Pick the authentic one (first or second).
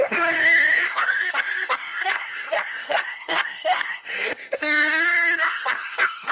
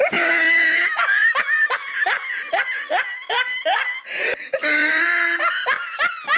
second